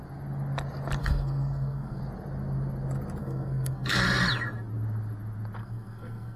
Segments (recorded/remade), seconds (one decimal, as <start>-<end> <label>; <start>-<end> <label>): 0.0-1.0 recorded; 1.0-2.0 remade; 2.0-3.2 recorded; 3.2-4.0 remade; 4.0-5.6 recorded; 5.6-6.4 remade